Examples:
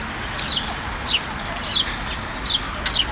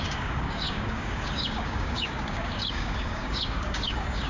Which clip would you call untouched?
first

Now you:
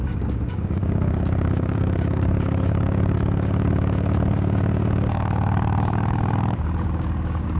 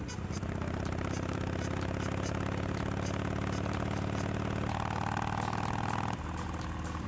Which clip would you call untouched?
second